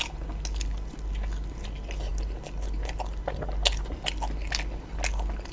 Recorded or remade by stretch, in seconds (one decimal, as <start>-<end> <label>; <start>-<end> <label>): 0.0-5.5 recorded

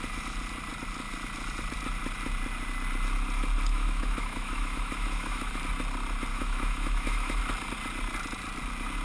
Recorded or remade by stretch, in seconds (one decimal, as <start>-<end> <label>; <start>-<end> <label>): 0.0-3.7 recorded; 3.7-5.5 remade; 5.5-6.3 recorded; 6.3-7.4 remade; 7.4-9.0 recorded

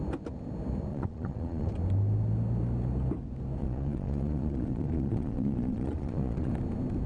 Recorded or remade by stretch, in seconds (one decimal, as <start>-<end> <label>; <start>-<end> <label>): 0.0-0.9 recorded; 0.9-1.7 remade; 1.7-3.6 recorded; 3.6-6.5 remade; 6.5-7.1 recorded